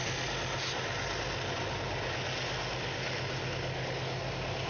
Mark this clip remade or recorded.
recorded